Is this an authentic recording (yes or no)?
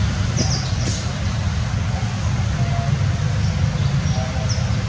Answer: yes